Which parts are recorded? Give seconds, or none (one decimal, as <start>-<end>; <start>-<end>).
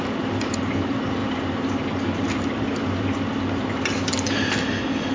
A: 0.0-5.1